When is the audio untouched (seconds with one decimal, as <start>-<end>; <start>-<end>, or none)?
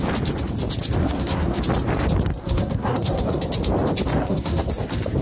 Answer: 0.0-1.0; 1.6-2.4; 3.5-4.2; 4.7-5.2